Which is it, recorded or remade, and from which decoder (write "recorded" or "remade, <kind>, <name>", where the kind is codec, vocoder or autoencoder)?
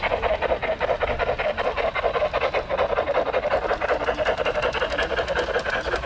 recorded